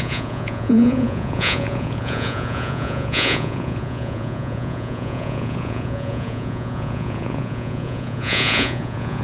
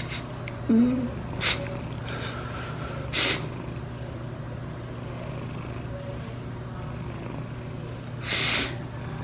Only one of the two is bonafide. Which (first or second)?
second